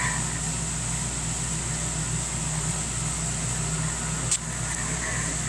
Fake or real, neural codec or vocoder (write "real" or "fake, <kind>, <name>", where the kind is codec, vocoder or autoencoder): real